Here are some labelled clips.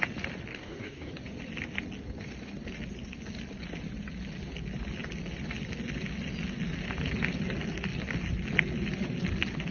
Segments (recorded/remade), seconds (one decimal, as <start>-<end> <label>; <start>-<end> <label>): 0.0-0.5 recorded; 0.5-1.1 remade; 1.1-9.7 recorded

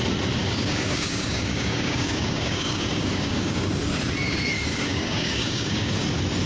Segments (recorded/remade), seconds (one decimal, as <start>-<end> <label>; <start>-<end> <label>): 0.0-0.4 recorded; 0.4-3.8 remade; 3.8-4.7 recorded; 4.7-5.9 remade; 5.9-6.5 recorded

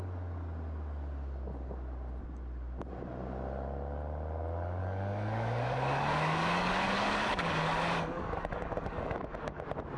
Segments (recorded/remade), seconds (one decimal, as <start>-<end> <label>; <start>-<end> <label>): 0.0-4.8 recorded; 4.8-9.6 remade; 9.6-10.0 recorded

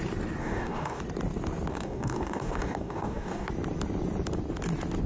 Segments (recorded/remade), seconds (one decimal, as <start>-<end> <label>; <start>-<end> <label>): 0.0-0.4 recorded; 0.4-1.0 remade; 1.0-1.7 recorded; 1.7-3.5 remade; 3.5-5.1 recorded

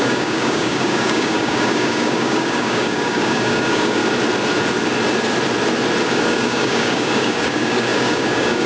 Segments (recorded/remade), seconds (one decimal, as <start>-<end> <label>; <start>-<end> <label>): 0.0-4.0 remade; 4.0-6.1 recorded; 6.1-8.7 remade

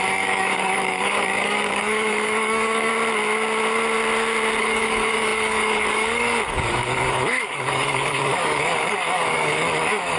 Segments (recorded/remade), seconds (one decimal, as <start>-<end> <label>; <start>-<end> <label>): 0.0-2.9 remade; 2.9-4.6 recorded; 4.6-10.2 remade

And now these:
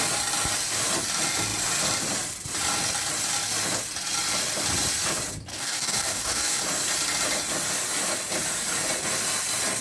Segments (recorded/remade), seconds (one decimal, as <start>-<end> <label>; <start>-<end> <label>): 0.0-5.5 recorded; 5.5-6.6 remade; 6.6-9.8 recorded